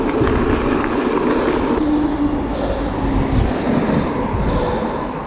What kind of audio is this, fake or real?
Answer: real